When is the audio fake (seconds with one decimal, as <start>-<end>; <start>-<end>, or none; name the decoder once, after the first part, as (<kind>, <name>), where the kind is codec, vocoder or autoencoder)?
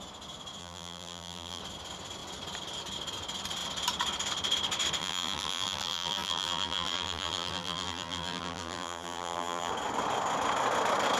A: 0.6-1.6 (vocoder, BigVGAN v2); 5.0-9.7